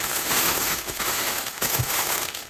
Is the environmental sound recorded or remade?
remade